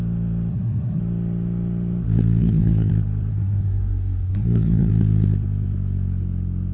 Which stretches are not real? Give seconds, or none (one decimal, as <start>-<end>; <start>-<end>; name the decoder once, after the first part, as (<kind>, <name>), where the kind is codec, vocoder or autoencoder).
0.5-1.0 (codec, SNAC); 2.4-2.9; 3.3-4.9